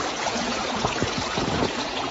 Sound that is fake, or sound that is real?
fake